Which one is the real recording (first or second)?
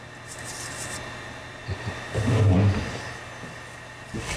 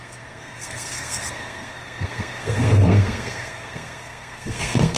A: first